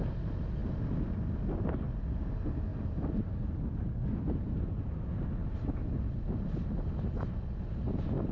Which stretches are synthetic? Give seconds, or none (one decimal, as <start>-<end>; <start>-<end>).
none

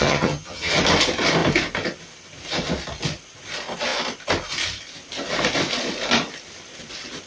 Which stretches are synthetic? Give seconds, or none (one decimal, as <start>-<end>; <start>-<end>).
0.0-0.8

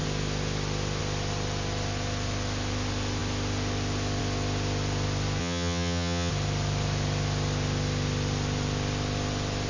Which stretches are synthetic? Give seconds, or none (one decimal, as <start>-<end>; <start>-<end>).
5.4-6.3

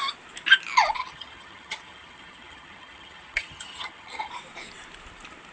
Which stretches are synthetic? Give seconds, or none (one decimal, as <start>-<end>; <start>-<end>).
1.0-4.3

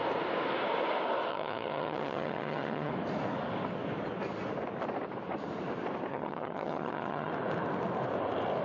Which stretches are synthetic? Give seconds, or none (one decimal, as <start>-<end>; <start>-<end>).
1.3-2.9; 6.1-7.3